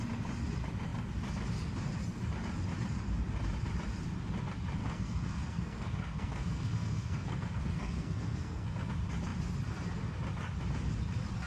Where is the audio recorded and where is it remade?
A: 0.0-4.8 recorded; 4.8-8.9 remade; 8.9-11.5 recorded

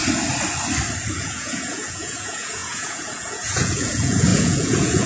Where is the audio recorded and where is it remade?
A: 0.0-1.1 recorded; 1.1-5.1 remade

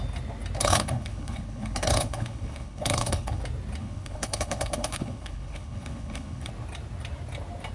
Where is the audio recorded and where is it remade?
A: 0.0-0.6 recorded; 0.6-3.4 remade; 3.4-3.8 recorded; 3.8-6.5 remade; 6.5-7.7 recorded

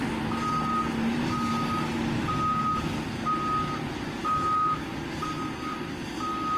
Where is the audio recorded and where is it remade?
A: 0.0-4.2 recorded; 4.2-4.9 remade; 4.9-6.6 recorded

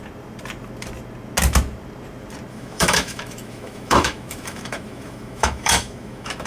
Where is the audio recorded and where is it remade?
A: 0.0-2.5 recorded; 2.5-6.5 remade

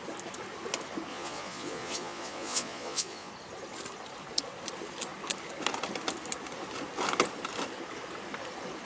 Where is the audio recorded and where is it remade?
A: 0.0-1.1 recorded; 1.1-3.3 remade; 3.3-8.9 recorded

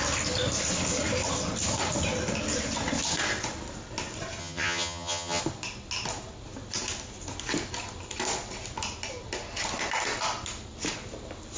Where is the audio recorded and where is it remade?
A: 0.0-4.4 recorded; 4.4-5.4 remade; 5.4-11.6 recorded

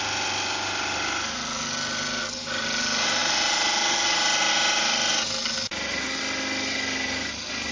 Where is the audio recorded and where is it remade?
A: 0.0-7.7 recorded